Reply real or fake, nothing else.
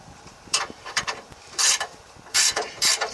fake